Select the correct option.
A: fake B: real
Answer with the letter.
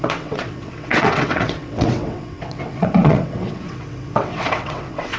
A